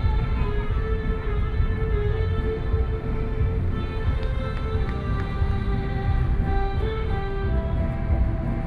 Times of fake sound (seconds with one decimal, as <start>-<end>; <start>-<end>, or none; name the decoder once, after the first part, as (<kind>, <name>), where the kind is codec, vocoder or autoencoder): 6.5-7.5 (autoencoder, DAC-VAE)